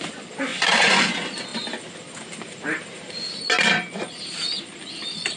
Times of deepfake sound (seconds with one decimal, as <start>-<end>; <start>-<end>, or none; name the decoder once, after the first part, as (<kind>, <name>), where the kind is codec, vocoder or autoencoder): 0.5-1.1 (vocoder, Vocos)